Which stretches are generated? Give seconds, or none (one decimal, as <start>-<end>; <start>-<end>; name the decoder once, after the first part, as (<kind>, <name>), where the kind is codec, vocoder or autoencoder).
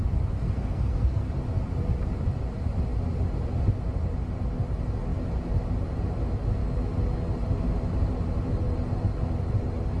0.4-1.3 (codec, SNAC)